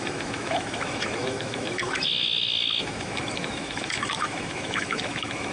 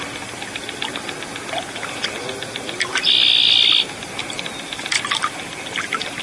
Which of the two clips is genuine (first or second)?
second